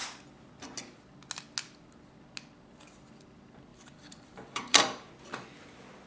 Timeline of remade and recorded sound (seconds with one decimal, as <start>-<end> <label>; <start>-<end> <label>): 0.0-3.7 recorded; 3.7-5.1 remade; 5.1-6.1 recorded